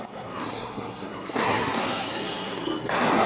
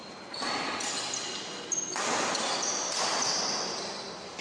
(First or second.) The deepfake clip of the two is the first